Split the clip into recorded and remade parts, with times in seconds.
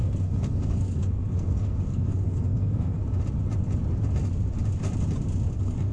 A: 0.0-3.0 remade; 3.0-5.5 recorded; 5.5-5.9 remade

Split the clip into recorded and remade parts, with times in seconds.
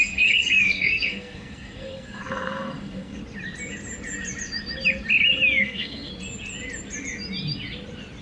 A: 0.0-3.2 remade; 3.2-5.6 recorded; 5.6-6.1 remade; 6.1-8.2 recorded